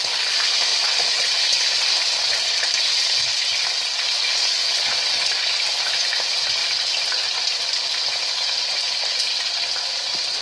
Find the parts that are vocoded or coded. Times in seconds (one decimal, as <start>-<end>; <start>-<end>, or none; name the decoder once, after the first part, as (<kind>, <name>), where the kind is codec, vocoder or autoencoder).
0.7-1.4 (vocoder, Vocos)